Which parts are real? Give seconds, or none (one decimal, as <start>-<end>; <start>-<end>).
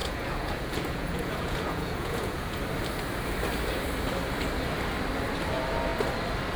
2.6-6.6